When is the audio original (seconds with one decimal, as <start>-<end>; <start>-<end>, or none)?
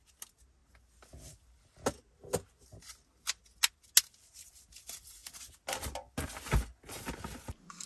0.0-7.9